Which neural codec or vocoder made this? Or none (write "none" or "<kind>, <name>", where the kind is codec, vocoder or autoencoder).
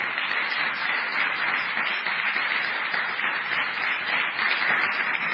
none